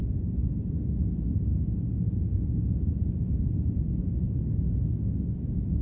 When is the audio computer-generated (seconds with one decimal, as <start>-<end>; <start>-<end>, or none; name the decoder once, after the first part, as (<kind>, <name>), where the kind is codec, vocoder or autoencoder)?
0.0-0.7 (vocoder, Vocos); 1.5-4.4